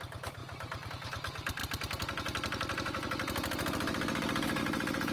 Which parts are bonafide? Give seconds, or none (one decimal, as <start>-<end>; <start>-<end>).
0.0-0.4; 0.9-5.1

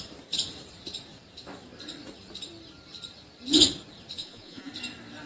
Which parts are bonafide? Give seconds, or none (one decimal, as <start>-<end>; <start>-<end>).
0.0-4.2; 4.7-5.3

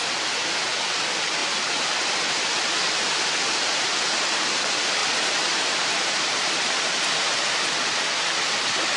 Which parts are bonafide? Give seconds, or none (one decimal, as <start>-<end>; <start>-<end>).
0.0-1.4; 2.4-5.0; 6.5-9.0